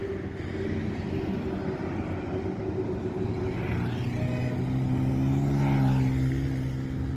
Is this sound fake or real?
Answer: real